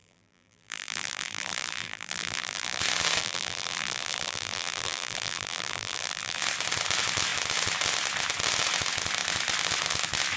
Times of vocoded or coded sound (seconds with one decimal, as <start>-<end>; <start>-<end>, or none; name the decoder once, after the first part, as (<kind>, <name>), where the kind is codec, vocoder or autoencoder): 0.0-2.8 (vocoder, BigVGAN v2); 3.2-6.4